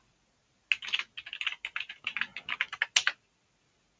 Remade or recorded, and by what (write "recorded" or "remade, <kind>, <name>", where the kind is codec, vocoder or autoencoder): recorded